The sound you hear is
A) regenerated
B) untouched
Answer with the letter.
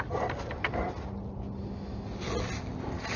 B